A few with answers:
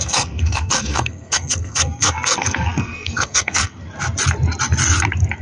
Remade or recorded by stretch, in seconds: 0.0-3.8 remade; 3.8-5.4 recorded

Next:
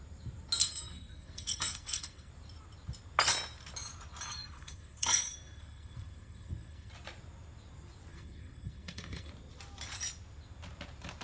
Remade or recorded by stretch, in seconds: 0.0-0.6 recorded; 0.6-2.3 remade; 2.3-4.3 recorded; 4.3-6.9 remade; 6.9-8.1 recorded; 8.1-9.3 remade; 9.3-11.2 recorded

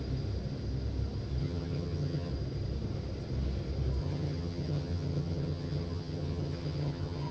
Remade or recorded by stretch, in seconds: 0.0-1.4 recorded; 1.4-2.3 remade; 2.3-4.0 recorded; 4.0-7.3 remade

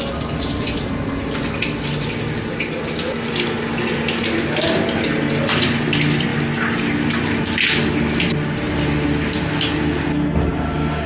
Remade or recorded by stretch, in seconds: 0.0-11.1 recorded

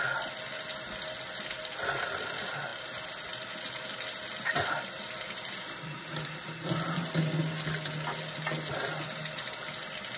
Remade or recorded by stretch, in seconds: 0.0-10.2 recorded